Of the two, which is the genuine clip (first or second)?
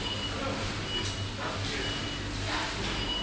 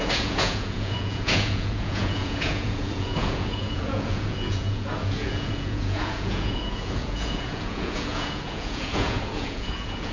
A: first